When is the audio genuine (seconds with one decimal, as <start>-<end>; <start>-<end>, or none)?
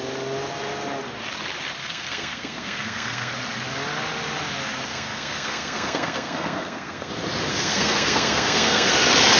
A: 0.0-1.8; 3.3-4.9; 7.1-7.5; 8.9-9.4